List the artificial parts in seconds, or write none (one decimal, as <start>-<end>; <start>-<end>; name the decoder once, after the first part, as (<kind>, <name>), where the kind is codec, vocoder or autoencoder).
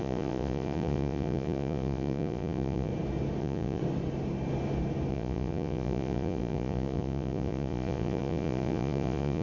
0.0-2.9 (vocoder, Vocos); 3.4-3.8; 5.1-9.4